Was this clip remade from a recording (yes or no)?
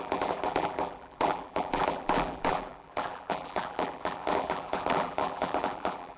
yes